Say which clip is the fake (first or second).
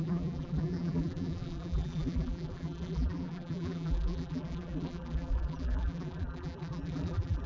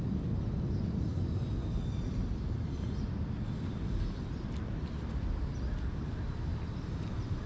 first